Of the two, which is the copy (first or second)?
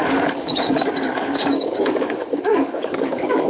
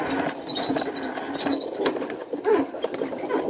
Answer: first